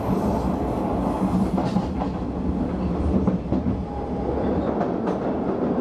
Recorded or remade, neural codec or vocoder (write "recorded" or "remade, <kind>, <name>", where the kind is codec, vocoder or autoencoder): recorded